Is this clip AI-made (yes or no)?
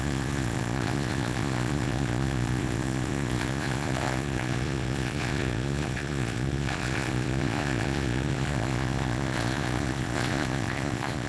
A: yes